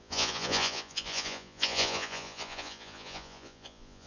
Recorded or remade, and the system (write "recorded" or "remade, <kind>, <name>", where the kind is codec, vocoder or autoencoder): remade, vocoder, Vocos